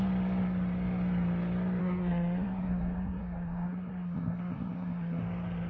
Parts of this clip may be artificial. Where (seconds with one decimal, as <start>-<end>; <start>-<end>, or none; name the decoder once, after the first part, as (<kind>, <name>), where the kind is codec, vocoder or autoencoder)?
1.8-5.2 (codec, SNAC)

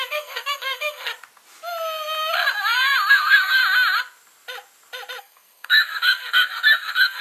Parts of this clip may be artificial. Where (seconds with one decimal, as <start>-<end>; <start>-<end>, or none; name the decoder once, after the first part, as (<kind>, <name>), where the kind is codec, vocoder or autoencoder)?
0.0-1.1 (codec, SNAC); 3.1-3.6; 5.2-7.2

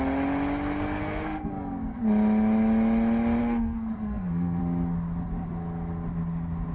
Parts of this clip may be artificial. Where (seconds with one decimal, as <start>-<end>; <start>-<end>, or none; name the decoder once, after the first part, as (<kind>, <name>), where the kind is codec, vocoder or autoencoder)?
1.0-2.0 (codec, SNAC); 3.4-4.6

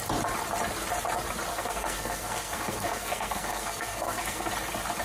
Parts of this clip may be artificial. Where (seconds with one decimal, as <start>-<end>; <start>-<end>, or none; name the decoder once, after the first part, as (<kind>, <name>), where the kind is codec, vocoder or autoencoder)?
1.5-4.5 (codec, SNAC)

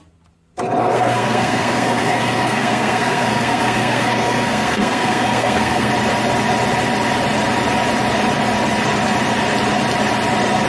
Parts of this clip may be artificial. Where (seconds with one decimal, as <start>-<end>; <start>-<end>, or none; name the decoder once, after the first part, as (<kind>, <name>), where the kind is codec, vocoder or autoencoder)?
0.8-5.9 (codec, SNAC)

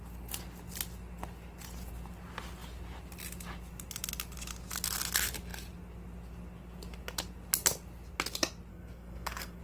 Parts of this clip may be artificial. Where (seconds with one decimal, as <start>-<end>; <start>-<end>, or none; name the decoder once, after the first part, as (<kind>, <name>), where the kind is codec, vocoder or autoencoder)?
8.7-9.6 (codec, SNAC)

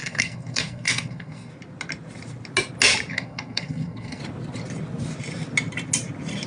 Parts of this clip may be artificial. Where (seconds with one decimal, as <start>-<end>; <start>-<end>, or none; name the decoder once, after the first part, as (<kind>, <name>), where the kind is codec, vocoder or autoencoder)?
0.0-1.5 (codec, SNAC); 3.1-4.2